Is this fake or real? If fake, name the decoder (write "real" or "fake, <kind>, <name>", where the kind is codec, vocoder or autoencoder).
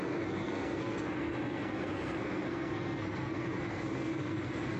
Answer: fake, codec, SNAC